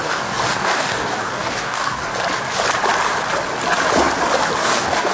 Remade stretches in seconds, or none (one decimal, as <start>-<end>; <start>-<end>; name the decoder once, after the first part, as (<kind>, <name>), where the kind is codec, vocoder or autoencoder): 0.0-2.1 (codec, DAC); 4.6-5.1